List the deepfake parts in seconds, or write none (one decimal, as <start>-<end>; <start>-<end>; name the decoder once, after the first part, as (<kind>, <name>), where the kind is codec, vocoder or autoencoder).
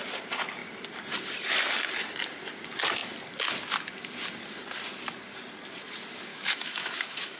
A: 6.3-7.4 (autoencoder, DAC-VAE)